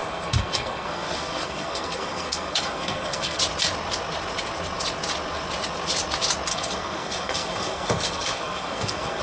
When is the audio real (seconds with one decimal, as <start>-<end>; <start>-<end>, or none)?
3.4-6.5